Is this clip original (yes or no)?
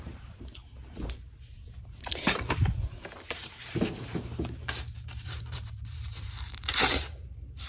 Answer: no